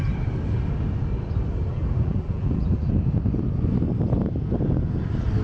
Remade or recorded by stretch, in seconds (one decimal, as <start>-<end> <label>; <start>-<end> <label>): 0.0-1.8 recorded; 1.8-2.9 remade; 2.9-5.4 recorded